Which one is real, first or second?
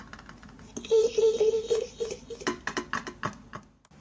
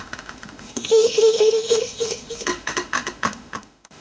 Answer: first